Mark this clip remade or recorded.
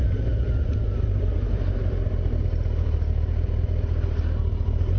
recorded